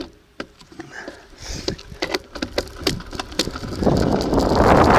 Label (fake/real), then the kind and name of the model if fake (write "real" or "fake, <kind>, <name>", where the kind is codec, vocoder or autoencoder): fake, vocoder, BigVGAN v2